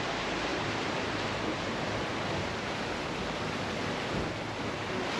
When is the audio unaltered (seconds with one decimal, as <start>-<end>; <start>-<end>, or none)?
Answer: 0.0-0.5; 3.1-5.2